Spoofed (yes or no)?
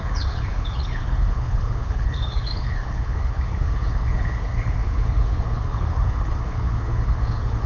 yes